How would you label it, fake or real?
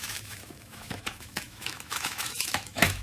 fake